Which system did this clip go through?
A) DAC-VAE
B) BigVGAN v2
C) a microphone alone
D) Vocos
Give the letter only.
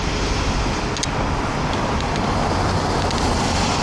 C